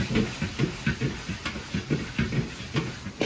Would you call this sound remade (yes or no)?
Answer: no